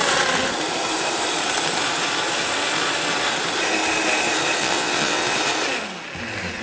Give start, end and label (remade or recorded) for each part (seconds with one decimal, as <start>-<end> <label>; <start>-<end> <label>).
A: 0.0-4.6 recorded; 4.6-5.3 remade; 5.3-6.6 recorded